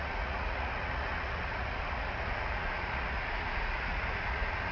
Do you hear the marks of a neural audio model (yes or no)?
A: yes